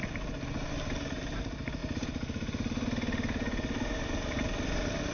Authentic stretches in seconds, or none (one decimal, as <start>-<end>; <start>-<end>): 0.0-5.1

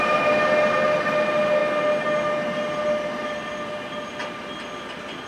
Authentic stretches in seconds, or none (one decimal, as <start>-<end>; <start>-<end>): 0.0-5.3

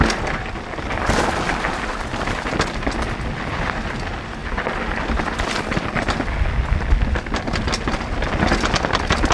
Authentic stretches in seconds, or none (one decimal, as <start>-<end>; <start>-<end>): 0.0-9.3

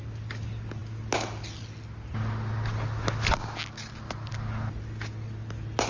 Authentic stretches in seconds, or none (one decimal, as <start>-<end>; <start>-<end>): 0.0-5.9

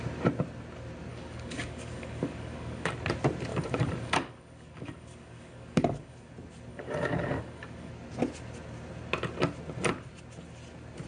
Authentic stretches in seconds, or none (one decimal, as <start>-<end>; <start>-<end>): 0.0-1.1; 2.9-3.5; 6.3-6.7; 7.9-11.1